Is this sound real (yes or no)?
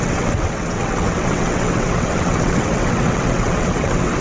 no